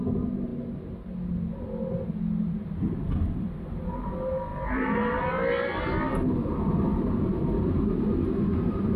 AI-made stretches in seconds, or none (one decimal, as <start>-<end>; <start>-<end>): 4.5-5.2; 6.9-7.8